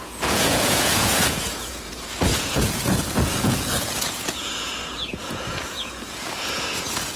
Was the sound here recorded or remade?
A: remade